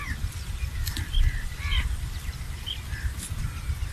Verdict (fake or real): real